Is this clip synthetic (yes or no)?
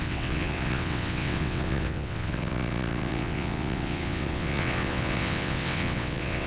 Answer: yes